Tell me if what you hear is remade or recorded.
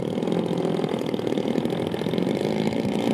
recorded